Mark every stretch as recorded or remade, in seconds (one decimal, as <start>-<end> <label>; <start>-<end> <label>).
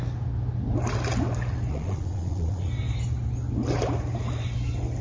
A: 0.0-1.7 recorded; 1.7-2.7 remade; 2.7-5.0 recorded